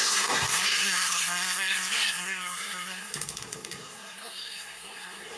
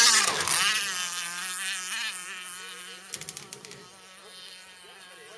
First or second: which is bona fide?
second